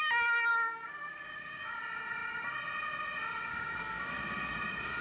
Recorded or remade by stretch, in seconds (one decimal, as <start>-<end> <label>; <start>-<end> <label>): 0.0-0.5 recorded; 0.5-1.8 remade; 1.8-3.5 recorded; 3.5-4.1 remade; 4.1-5.0 recorded